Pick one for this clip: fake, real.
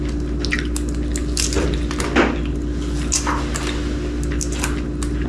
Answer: real